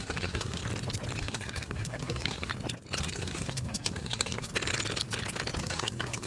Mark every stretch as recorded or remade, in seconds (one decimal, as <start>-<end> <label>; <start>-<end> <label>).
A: 0.0-0.6 remade; 0.6-1.2 recorded; 1.2-2.5 remade; 2.5-3.0 recorded; 3.0-4.5 remade; 4.5-5.6 recorded; 5.6-6.3 remade